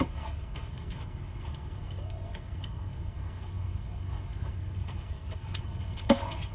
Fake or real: fake